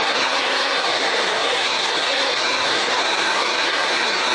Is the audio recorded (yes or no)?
no